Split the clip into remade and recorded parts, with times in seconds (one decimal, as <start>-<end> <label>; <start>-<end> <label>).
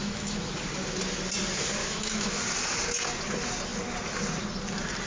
0.0-0.5 remade; 0.5-1.8 recorded; 1.8-2.4 remade; 2.4-5.1 recorded